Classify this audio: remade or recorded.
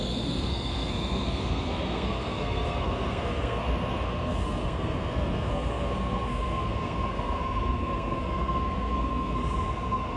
remade